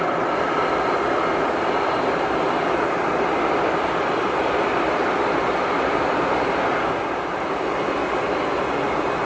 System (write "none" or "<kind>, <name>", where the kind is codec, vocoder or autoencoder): none